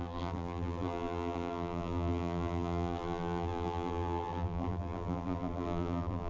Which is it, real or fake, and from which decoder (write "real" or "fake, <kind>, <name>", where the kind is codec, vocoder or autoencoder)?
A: fake, vocoder, BigVGAN v2